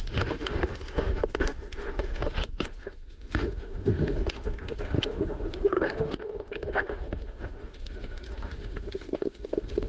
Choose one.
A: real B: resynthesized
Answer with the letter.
B